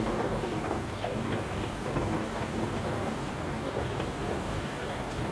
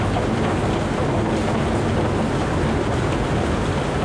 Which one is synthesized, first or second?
first